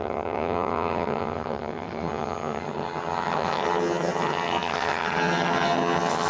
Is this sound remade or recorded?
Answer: remade